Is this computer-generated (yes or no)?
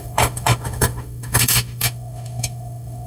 yes